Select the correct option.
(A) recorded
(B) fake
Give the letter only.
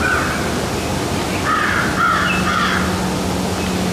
A